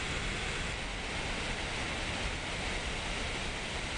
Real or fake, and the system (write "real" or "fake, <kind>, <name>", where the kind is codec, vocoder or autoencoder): real